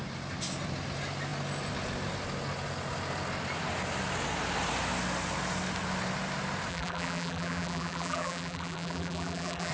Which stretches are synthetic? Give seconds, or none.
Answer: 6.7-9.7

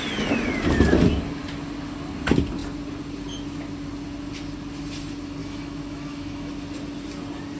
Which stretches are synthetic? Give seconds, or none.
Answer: 5.4-6.5

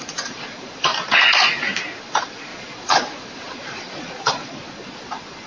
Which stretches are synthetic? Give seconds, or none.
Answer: 0.0-0.9; 2.0-5.5

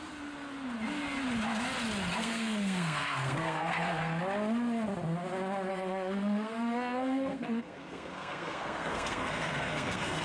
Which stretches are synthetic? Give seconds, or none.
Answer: 2.2-4.2; 5.7-10.2

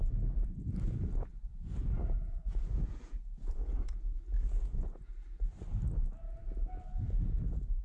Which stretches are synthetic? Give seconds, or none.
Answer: 1.3-5.1

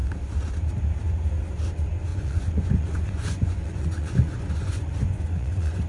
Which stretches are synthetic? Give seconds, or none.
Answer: 2.1-5.9

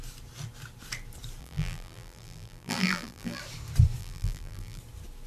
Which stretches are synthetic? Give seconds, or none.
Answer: 1.4-3.4; 4.0-4.8

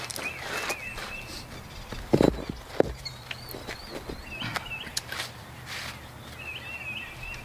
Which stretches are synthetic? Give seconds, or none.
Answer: none